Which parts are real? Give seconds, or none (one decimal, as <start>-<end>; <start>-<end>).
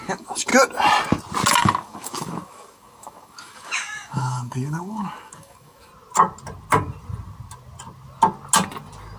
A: 0.5-1.5; 5.9-9.2